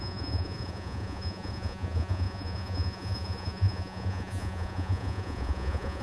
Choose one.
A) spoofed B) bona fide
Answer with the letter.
A